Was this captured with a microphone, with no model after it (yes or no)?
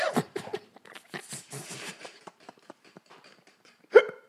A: no